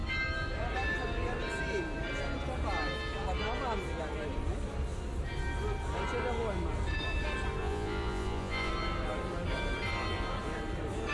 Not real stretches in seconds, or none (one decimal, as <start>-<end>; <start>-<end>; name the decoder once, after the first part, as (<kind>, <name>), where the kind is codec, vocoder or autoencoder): 7.6-8.7 (vocoder, Vocos)